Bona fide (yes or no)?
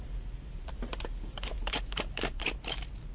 no